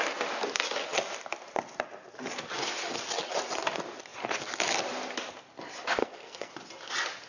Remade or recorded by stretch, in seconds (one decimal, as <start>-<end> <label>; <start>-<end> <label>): 0.0-6.0 recorded; 6.0-6.5 remade; 6.5-7.3 recorded